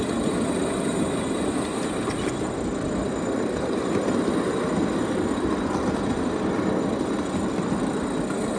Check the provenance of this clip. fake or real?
real